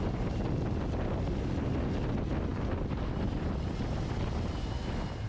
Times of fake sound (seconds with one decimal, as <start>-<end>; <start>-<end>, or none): none